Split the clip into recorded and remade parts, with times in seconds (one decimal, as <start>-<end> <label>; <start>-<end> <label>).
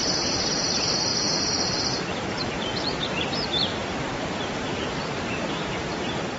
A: 0.0-1.1 remade; 1.1-2.3 recorded; 2.3-6.4 remade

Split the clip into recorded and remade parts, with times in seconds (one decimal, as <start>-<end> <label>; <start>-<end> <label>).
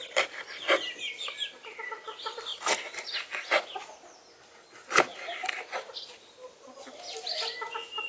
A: 0.0-5.4 recorded; 5.4-6.1 remade; 6.1-8.1 recorded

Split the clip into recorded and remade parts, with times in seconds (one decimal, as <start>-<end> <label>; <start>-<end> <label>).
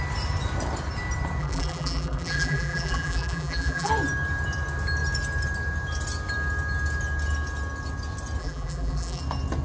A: 0.0-1.4 recorded; 1.4-3.9 remade; 3.9-8.4 recorded; 8.4-9.2 remade; 9.2-9.6 recorded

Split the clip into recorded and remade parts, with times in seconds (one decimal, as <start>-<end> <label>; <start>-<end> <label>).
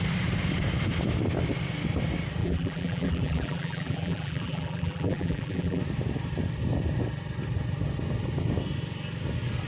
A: 0.0-2.4 recorded; 2.4-5.8 remade; 5.8-9.7 recorded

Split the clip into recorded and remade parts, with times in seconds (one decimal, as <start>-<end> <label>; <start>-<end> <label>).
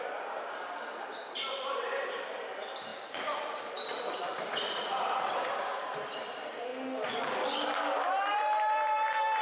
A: 0.0-6.7 remade; 6.7-8.0 recorded; 8.0-9.4 remade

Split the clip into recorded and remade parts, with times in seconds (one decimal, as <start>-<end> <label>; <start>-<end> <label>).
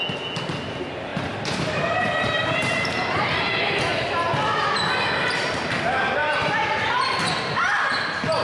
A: 0.0-1.1 recorded; 1.1-3.7 remade; 3.7-6.2 recorded; 6.2-7.2 remade; 7.2-8.4 recorded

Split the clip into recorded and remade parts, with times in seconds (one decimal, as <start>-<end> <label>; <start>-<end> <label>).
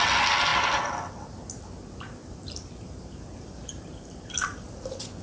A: 0.0-2.2 recorded; 2.2-4.7 remade; 4.7-5.2 recorded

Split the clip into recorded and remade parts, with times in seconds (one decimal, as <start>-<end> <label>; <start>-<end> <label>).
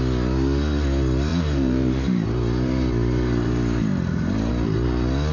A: 0.0-1.3 recorded; 1.3-4.5 remade; 4.5-5.3 recorded